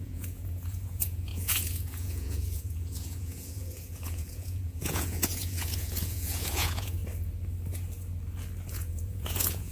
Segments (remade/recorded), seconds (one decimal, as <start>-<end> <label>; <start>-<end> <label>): 0.0-7.0 remade; 7.0-8.7 recorded; 8.7-9.7 remade